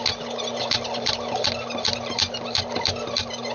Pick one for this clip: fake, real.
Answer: real